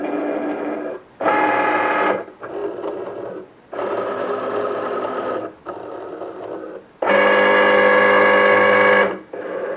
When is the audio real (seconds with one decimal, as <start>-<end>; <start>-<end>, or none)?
0.0-9.8